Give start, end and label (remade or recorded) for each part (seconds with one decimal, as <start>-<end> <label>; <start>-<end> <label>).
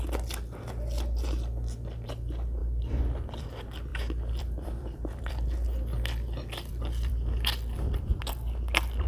0.0-2.6 recorded; 2.6-3.4 remade; 3.4-3.9 recorded; 3.9-5.3 remade; 5.3-6.7 recorded; 6.7-8.2 remade; 8.2-9.1 recorded